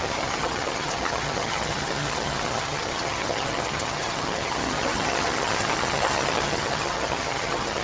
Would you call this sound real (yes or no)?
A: no